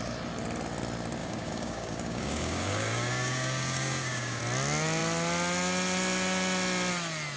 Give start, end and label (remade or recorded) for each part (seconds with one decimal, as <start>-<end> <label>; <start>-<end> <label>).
0.0-1.2 recorded; 1.2-4.4 remade; 4.4-7.4 recorded